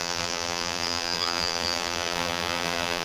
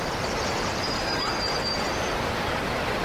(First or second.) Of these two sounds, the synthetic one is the first